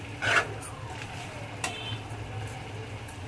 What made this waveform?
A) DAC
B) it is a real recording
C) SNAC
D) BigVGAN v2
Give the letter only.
B